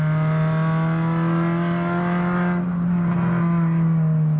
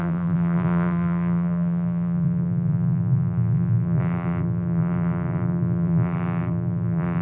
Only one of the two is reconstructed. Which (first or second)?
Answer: second